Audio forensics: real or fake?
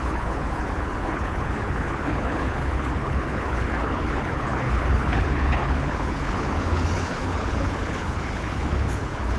fake